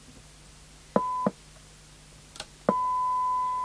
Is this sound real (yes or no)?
yes